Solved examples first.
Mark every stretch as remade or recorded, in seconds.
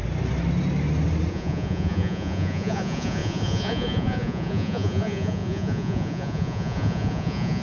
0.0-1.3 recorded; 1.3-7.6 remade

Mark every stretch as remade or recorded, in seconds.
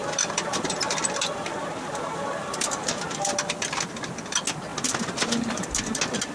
0.0-3.8 remade; 3.8-4.7 recorded; 4.7-5.6 remade; 5.6-6.3 recorded